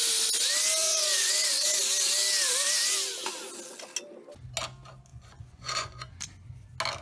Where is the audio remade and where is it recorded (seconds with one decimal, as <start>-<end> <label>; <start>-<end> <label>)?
0.0-0.8 recorded; 0.8-1.8 remade; 1.8-5.1 recorded; 5.1-6.1 remade; 6.1-7.0 recorded